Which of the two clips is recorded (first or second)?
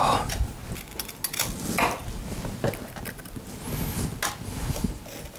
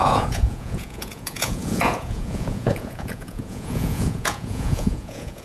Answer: first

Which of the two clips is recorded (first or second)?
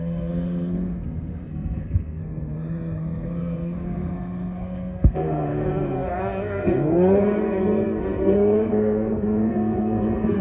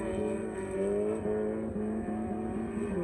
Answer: second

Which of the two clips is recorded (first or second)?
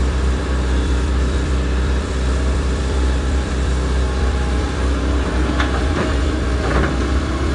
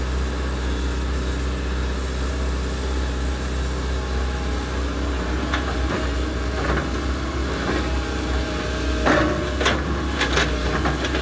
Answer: second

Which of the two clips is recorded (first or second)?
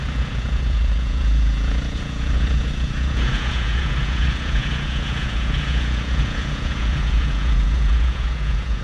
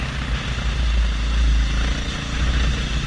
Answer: second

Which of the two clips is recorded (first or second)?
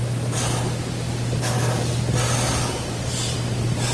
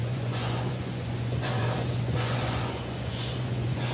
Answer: first